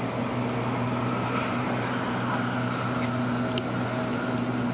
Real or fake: real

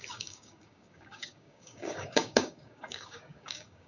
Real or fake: fake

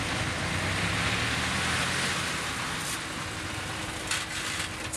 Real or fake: real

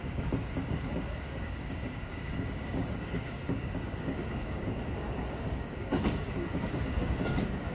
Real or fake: fake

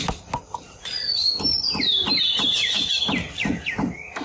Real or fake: real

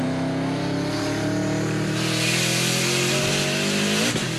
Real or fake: real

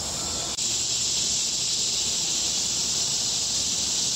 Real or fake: real